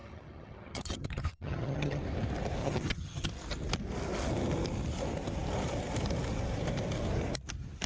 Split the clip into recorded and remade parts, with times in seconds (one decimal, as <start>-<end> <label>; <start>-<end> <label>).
0.0-2.0 remade; 2.0-2.6 recorded; 2.6-3.3 remade; 3.3-7.9 recorded

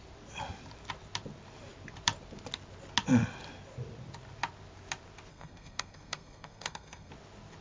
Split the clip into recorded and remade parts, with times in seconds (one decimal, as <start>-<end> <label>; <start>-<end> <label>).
0.0-5.3 recorded; 5.3-7.1 remade; 7.1-7.6 recorded